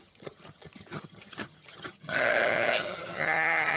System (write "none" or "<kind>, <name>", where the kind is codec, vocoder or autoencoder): vocoder, HiFi-GAN